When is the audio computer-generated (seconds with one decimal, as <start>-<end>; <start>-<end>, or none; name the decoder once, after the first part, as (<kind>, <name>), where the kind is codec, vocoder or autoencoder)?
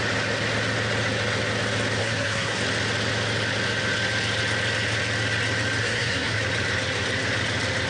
2.0-2.6 (codec, SNAC); 5.8-6.4